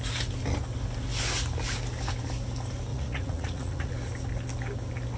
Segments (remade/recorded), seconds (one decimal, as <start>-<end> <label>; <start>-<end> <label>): 0.0-2.9 recorded; 2.9-3.9 remade; 3.9-5.2 recorded